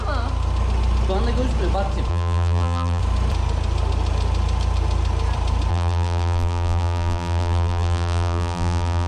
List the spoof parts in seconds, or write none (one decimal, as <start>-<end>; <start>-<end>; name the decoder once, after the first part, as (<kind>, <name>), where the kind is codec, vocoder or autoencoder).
2.1-3.0 (vocoder, BigVGAN v2); 5.7-9.1